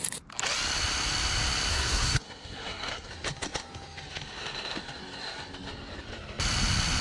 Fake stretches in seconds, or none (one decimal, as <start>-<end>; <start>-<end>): 1.7-3.1